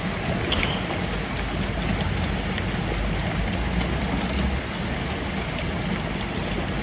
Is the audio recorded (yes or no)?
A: yes